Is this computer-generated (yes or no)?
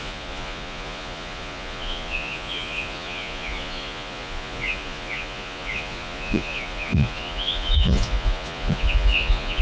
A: yes